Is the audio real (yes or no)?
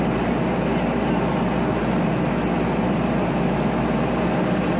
yes